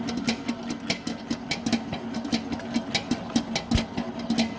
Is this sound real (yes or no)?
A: yes